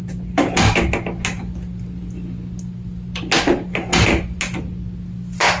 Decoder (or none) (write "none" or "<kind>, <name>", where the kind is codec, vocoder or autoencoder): none